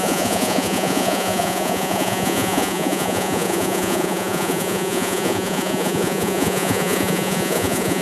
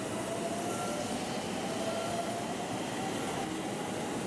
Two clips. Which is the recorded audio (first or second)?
second